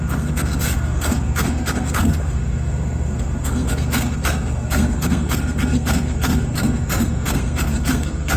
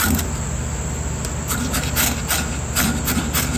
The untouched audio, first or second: second